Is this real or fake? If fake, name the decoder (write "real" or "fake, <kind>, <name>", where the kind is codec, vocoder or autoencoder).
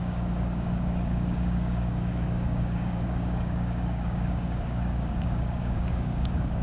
fake, codec, DAC